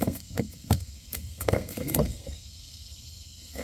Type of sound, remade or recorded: remade